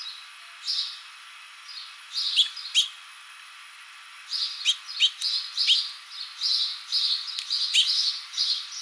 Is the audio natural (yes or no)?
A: yes